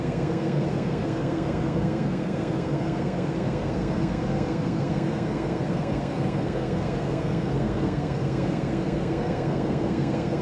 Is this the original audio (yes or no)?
no